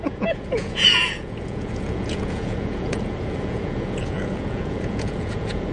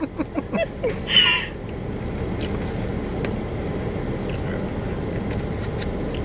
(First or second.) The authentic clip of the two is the second